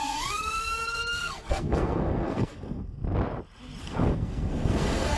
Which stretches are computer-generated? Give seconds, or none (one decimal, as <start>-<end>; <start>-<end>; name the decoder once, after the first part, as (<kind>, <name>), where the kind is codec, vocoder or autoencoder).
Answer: 0.0-3.0 (codec, SNAC); 3.8-5.2